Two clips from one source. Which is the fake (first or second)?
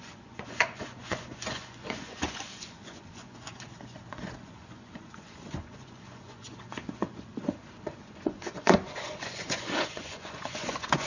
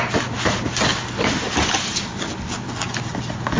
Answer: first